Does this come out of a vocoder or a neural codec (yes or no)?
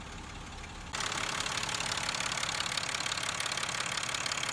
no